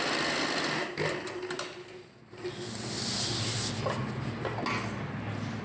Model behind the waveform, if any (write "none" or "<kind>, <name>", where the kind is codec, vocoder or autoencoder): none